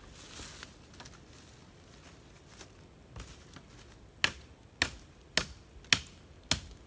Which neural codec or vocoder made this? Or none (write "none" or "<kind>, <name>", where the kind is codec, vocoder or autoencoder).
none